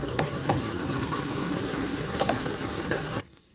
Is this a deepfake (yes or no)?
yes